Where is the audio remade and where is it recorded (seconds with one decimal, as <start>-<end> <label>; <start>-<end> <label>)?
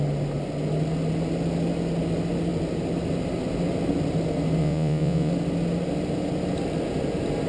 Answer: 0.0-4.6 recorded; 4.6-5.3 remade; 5.3-7.5 recorded